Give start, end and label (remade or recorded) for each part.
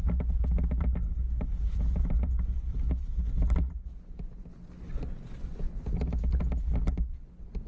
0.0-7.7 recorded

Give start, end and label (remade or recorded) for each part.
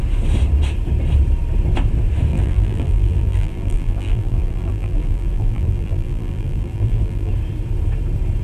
0.0-2.3 recorded; 2.3-7.3 remade; 7.3-8.4 recorded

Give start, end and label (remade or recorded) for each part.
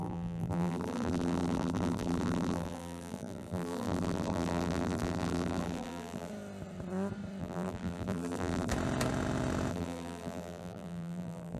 0.0-6.3 remade; 6.3-7.4 recorded; 7.4-8.7 remade; 8.7-9.7 recorded; 9.7-11.6 remade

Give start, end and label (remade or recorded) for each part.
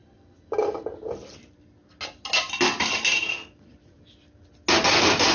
0.0-3.2 recorded; 3.2-4.0 remade; 4.0-5.3 recorded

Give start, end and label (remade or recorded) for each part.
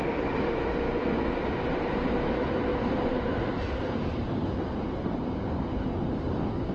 0.0-2.7 recorded; 2.7-4.4 remade; 4.4-5.0 recorded; 5.0-6.0 remade; 6.0-6.7 recorded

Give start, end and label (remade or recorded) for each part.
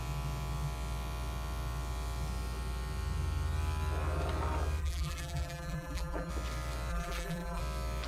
0.0-4.8 recorded; 4.8-6.3 remade; 6.3-6.9 recorded; 6.9-7.6 remade; 7.6-8.1 recorded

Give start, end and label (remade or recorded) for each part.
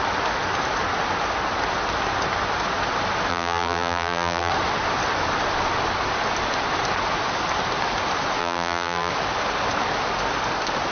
0.0-3.3 recorded; 3.3-4.5 remade; 4.5-8.4 recorded; 8.4-9.1 remade; 9.1-10.9 recorded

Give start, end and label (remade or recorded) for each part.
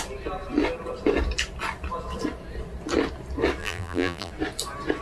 0.0-3.6 recorded; 3.6-4.3 remade; 4.3-5.0 recorded